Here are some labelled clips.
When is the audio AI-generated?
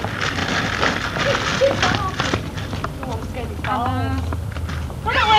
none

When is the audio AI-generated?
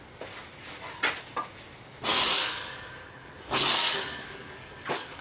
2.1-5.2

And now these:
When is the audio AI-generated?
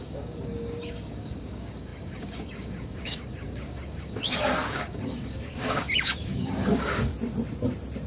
0.0-7.1